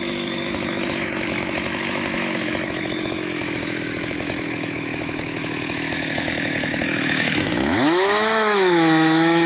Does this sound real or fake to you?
fake